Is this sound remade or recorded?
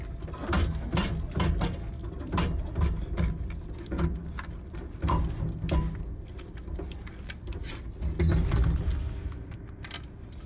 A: recorded